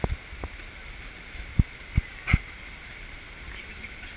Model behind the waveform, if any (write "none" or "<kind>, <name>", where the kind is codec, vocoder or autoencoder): none